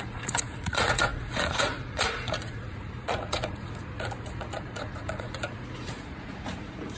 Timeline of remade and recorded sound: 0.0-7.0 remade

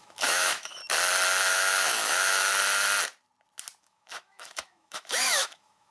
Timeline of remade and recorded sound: 0.0-0.8 remade; 0.8-1.5 recorded; 1.5-2.5 remade; 2.5-3.8 recorded; 3.8-5.9 remade

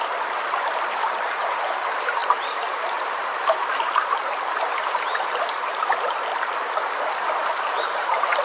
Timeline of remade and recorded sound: 0.0-6.3 remade; 6.3-7.6 recorded; 7.6-8.4 remade

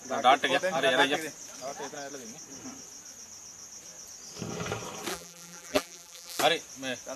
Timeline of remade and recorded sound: 0.0-5.1 recorded; 5.1-6.4 remade; 6.4-7.2 recorded

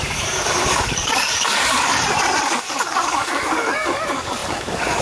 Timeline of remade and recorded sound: 0.0-1.9 remade; 1.9-2.4 recorded; 2.4-5.0 remade